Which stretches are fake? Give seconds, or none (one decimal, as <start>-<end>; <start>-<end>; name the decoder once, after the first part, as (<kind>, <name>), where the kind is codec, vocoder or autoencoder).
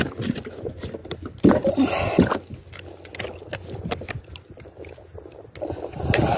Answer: 1.0-1.7 (vocoder, BigVGAN v2)